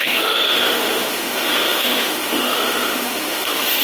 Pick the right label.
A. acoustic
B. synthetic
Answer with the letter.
B